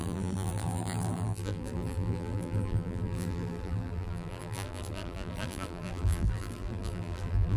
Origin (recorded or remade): remade